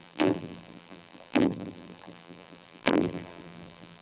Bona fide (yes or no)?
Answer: no